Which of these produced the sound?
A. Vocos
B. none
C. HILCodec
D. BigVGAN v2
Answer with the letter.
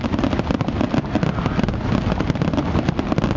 B